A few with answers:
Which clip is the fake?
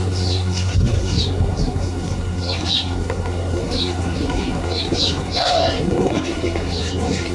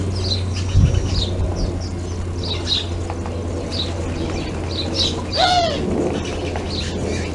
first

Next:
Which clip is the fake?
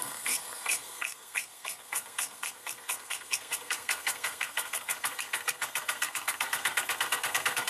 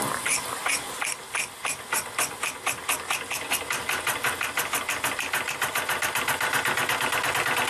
first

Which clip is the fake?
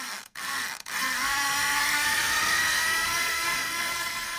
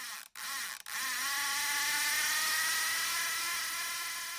first